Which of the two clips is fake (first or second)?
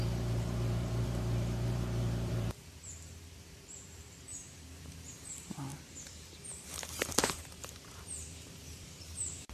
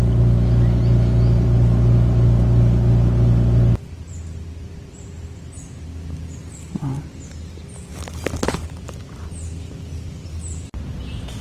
first